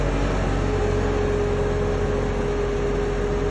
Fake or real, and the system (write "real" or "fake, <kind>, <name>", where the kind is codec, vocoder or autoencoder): real